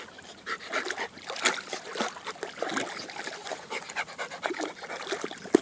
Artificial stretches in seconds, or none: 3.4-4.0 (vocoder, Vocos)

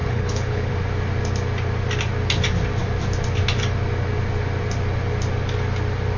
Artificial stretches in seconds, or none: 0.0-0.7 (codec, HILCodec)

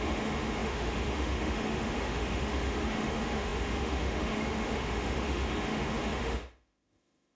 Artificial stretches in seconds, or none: 0.0-7.3 (autoencoder, DAC-VAE)